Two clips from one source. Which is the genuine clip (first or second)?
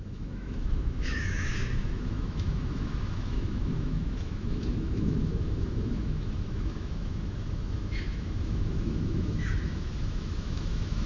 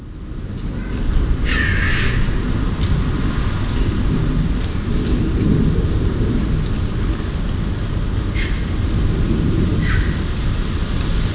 second